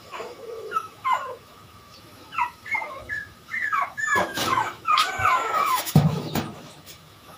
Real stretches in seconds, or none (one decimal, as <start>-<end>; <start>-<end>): none